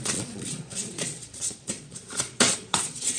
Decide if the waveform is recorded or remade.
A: remade